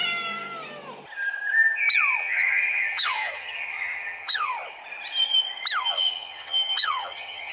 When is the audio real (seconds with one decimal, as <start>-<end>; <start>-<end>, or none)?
0.0-2.2; 4.5-5.8